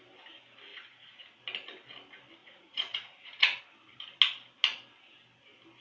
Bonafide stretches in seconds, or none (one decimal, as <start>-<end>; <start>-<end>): 0.0-0.7; 1.4-2.4; 3.6-5.8